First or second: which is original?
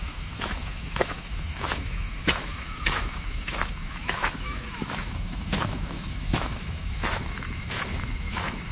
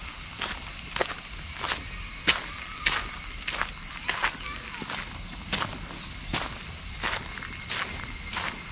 second